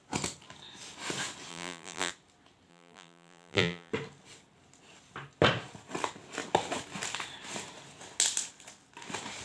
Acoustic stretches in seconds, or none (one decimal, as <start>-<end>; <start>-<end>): 0.0-1.5; 2.1-2.7; 3.9-9.4

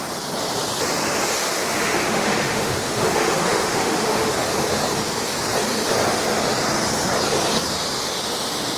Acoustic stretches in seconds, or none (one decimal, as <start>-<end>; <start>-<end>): 0.0-1.6; 4.3-8.8

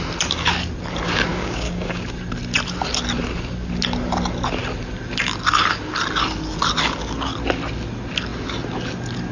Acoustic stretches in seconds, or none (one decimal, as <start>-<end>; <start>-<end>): 0.0-1.3; 2.0-9.3